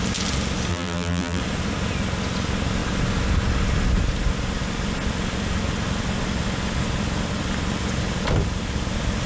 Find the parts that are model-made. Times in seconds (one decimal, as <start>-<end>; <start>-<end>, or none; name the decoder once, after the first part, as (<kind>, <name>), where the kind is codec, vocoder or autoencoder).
0.7-1.4 (vocoder, BigVGAN v2)